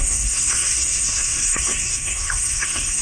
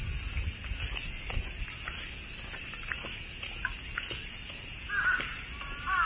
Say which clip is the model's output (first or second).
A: first